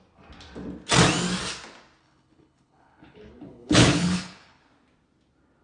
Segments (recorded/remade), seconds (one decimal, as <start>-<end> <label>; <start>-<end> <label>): 0.0-2.0 recorded; 2.0-4.6 remade; 4.6-5.6 recorded